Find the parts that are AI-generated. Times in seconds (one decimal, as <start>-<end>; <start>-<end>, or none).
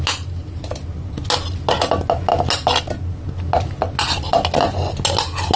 none